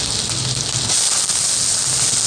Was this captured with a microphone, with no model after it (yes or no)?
yes